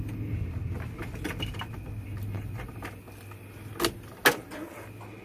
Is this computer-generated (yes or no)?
no